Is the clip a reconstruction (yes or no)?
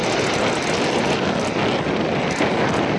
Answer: no